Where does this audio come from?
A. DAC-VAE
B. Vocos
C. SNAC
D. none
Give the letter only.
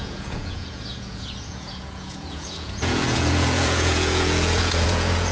B